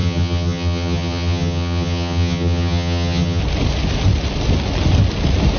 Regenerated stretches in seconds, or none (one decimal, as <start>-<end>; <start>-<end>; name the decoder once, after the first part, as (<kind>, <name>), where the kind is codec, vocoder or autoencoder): 0.0-3.4 (vocoder, HiFi-GAN)